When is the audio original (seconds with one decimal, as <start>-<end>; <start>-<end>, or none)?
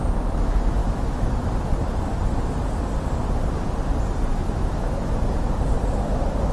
0.0-0.8; 1.5-4.3; 5.2-6.5